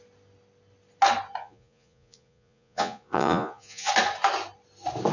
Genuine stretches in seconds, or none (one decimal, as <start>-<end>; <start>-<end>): 0.0-1.4; 3.9-5.1